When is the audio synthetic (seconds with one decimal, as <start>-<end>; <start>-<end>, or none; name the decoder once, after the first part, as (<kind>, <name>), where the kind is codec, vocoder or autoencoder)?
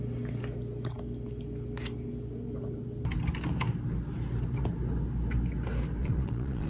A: 6.0-6.7 (vocoder, Vocos)